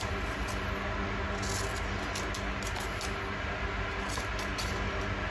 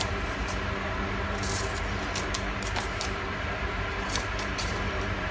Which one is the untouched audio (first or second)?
first